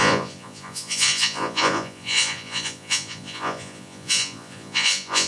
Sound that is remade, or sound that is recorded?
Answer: remade